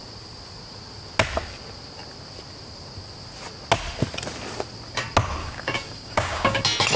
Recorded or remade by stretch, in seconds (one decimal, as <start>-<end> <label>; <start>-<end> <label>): 0.0-5.4 recorded; 5.4-6.6 remade; 6.6-7.0 recorded